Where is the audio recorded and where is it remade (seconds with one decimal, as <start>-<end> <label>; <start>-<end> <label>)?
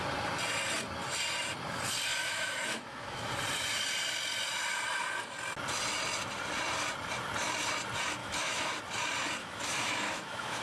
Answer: 0.0-2.1 recorded; 2.1-3.3 remade; 3.3-8.2 recorded; 8.2-8.8 remade; 8.8-9.4 recorded; 9.4-10.6 remade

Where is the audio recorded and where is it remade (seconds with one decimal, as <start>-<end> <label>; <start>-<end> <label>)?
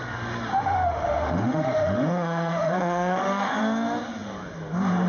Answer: 0.0-0.5 recorded; 0.5-3.6 remade; 3.6-5.1 recorded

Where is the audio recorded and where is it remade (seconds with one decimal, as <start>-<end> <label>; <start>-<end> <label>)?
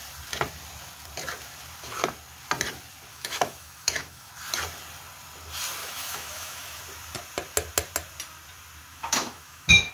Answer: 0.0-3.1 recorded; 3.1-4.3 remade; 4.3-5.8 recorded; 5.8-6.8 remade; 6.8-8.9 recorded; 8.9-9.9 remade